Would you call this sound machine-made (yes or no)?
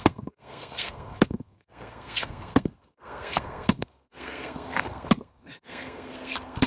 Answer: yes